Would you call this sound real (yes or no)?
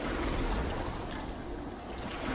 yes